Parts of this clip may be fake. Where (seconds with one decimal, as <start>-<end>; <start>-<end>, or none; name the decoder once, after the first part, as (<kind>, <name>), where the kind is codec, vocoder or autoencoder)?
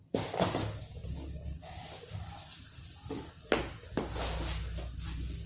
none